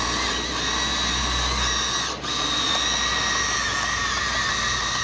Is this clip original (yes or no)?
yes